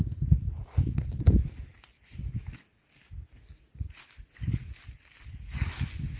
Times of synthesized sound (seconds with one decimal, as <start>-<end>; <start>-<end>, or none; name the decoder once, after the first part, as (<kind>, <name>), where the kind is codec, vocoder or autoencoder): none